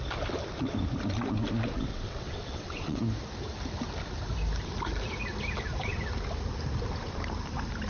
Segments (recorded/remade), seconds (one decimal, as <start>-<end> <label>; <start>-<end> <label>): 0.0-1.9 recorded; 1.9-3.0 remade; 3.0-7.9 recorded